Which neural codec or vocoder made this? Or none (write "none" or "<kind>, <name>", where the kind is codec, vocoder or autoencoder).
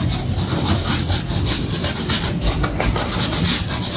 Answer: none